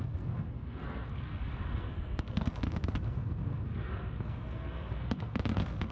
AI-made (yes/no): yes